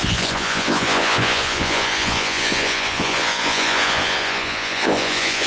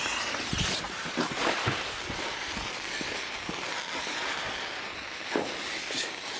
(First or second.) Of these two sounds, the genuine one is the second